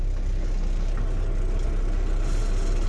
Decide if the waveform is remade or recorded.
recorded